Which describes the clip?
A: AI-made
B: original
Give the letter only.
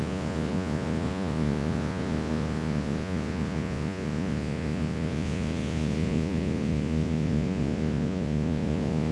A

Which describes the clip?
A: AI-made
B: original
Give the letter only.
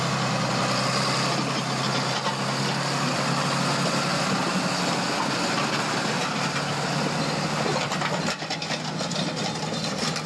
B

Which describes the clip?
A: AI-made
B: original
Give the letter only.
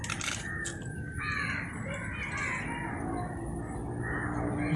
B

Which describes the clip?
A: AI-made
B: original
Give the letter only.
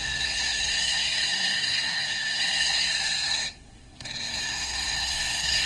A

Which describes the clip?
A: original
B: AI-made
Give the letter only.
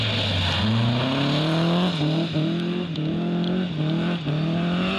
A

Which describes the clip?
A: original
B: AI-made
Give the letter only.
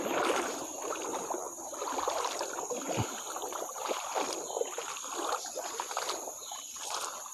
A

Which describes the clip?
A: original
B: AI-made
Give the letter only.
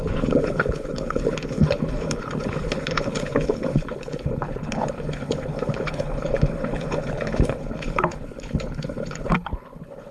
B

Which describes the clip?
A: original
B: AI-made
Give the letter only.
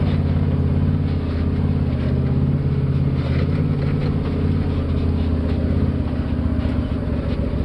A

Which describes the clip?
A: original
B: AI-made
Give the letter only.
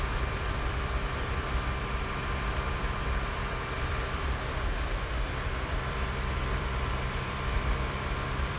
B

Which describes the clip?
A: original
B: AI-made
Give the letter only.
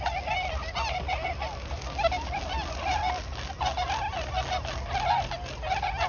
A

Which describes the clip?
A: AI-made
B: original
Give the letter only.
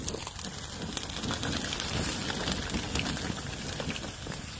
B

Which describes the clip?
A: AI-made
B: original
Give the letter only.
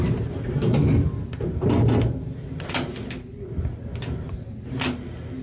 B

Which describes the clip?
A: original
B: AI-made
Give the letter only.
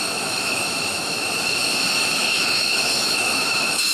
B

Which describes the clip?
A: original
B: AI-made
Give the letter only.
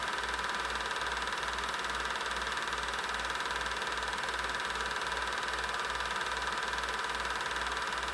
A